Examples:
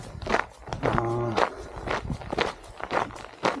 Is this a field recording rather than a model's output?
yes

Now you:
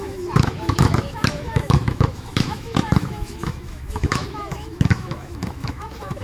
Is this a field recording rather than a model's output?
no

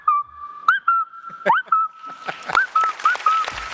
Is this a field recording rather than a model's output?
yes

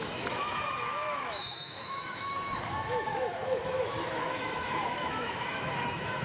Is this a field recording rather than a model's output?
no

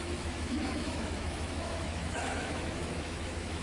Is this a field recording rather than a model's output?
no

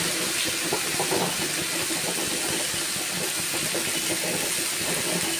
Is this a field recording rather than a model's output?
yes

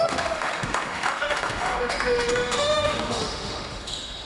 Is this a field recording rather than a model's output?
no